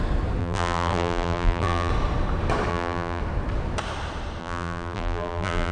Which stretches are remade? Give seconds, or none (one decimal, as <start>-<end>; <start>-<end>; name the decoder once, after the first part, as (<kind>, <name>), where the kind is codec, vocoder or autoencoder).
0.4-1.9 (vocoder, BigVGAN v2); 2.7-3.2; 4.4-5.7